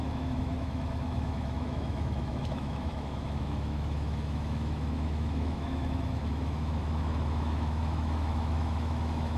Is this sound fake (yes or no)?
yes